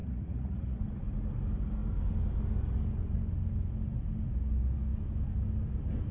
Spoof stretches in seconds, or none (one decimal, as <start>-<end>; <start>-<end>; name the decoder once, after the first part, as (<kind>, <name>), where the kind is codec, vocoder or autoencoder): 0.0-0.8 (vocoder, Vocos)